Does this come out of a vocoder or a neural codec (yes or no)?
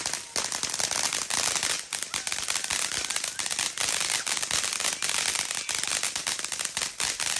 no